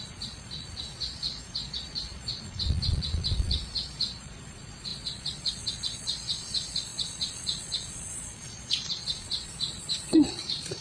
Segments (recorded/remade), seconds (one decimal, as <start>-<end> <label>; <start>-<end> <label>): 0.0-10.8 remade